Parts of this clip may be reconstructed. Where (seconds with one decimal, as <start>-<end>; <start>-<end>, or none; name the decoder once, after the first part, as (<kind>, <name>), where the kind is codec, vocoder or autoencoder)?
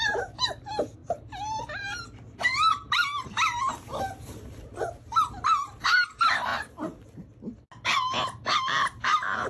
0.0-6.5 (vocoder, BigVGAN v2); 8.6-9.5